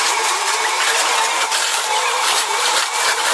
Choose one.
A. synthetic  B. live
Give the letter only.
A